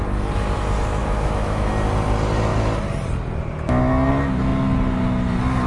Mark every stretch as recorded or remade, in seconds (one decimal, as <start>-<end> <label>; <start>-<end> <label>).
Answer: 0.0-1.0 recorded; 1.0-1.7 remade; 1.7-5.7 recorded